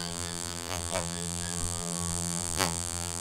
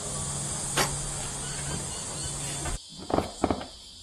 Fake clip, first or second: first